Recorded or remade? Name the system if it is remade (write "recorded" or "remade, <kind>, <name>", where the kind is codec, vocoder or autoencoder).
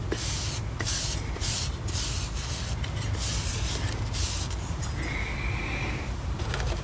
recorded